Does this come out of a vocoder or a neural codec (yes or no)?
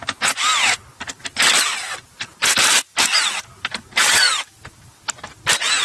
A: no